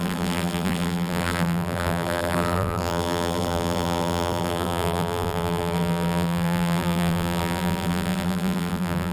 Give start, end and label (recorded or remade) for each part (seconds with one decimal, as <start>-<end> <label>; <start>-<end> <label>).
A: 0.0-9.1 remade